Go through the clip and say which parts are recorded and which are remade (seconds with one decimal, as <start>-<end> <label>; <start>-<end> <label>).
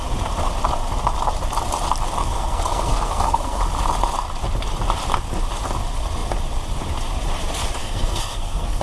0.0-2.2 recorded; 2.2-3.6 remade; 3.6-7.8 recorded; 7.8-8.8 remade